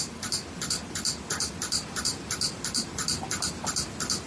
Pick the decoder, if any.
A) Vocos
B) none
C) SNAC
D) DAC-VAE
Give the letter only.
B